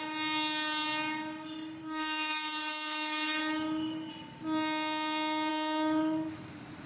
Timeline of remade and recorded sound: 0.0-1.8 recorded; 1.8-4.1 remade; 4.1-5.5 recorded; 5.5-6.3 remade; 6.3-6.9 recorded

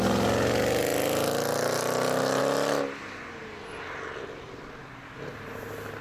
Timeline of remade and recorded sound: 0.0-6.0 recorded

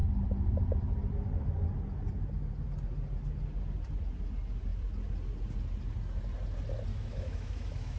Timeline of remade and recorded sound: 0.0-6.9 recorded; 6.9-8.0 remade

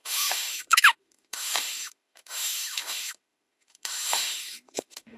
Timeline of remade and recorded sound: 0.0-5.2 remade

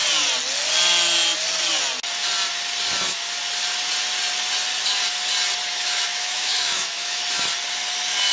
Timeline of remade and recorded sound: 0.0-5.7 recorded; 5.7-7.2 remade; 7.2-8.3 recorded

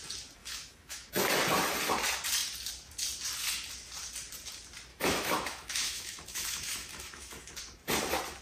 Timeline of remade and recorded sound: 0.0-0.4 recorded; 0.4-1.1 remade; 1.1-4.9 recorded; 4.9-7.5 remade; 7.5-8.4 recorded

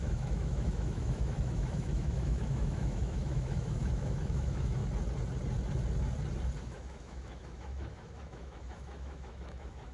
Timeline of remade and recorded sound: 0.0-4.8 remade; 4.8-6.6 recorded; 6.6-9.9 remade

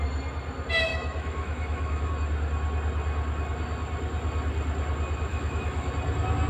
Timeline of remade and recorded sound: 0.0-0.9 recorded; 0.9-2.1 remade; 2.1-5.3 recorded; 5.3-5.9 remade; 5.9-6.5 recorded